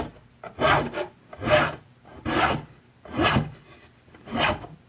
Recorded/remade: recorded